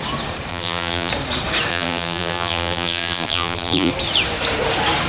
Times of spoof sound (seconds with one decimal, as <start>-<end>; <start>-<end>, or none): 0.5-1.1; 1.7-3.9